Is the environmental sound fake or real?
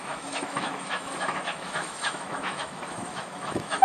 fake